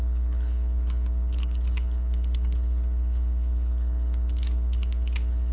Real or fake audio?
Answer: fake